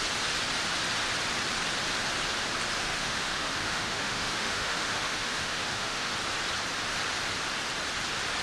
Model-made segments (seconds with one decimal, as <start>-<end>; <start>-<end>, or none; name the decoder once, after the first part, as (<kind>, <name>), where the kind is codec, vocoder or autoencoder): 2.8-6.1 (autoencoder, DAC-VAE)